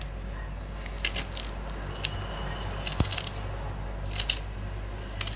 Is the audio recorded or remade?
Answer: recorded